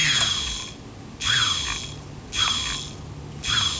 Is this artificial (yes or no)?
no